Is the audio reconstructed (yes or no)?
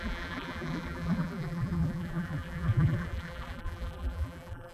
yes